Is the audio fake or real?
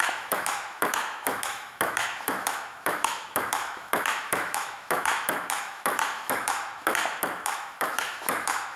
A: fake